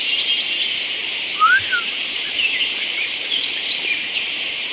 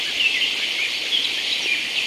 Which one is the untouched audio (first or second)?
second